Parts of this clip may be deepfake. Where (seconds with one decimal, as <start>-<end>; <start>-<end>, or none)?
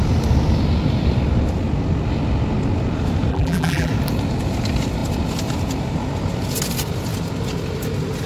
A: 3.3-3.9